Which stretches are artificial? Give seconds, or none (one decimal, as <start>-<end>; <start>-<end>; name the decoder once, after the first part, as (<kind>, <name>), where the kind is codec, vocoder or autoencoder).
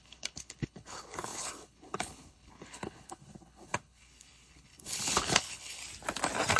0.0-5.8 (codec, HILCodec)